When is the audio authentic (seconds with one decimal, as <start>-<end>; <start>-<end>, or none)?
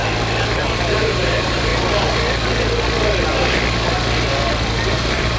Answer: 0.0-0.6; 1.7-4.9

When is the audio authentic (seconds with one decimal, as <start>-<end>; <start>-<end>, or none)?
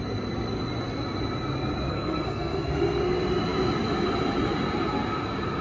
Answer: 0.0-1.9; 3.0-5.6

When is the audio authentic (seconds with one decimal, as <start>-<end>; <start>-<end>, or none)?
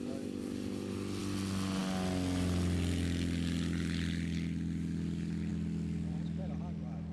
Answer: 0.0-7.1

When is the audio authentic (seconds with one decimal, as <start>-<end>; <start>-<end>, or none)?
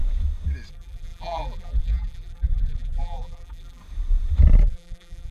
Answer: 0.0-0.7; 3.8-4.6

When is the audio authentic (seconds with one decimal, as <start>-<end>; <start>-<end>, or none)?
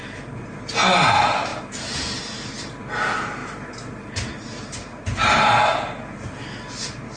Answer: 0.0-7.2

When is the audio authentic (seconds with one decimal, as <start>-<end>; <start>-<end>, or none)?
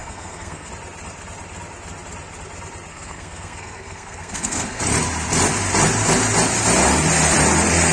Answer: 0.7-2.9; 4.8-7.9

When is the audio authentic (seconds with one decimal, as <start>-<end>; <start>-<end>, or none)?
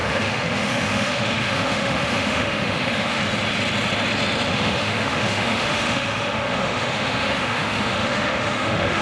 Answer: 3.2-4.5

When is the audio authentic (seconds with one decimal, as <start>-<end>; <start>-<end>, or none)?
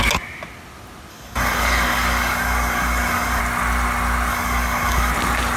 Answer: 0.0-1.1; 3.4-4.3; 5.1-5.6